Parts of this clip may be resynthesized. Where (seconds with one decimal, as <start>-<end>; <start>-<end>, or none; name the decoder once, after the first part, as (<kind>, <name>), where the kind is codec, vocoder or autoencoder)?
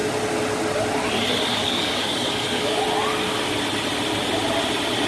1.5-2.8 (codec, DAC)